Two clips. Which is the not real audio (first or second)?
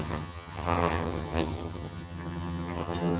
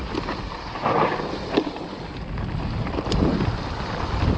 first